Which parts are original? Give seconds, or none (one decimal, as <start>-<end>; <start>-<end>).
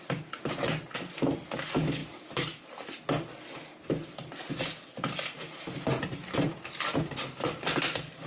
0.0-8.3